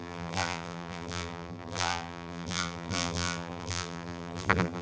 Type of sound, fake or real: fake